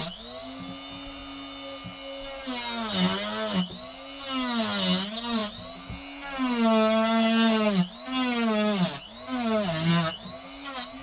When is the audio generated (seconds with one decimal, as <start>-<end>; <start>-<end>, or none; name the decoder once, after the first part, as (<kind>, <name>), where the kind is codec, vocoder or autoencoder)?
none